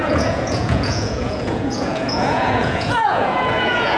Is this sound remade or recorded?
remade